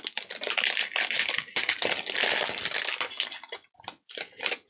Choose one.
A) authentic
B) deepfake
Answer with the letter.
A